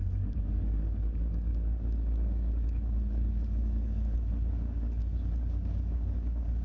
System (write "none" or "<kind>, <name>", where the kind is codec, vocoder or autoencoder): codec, DAC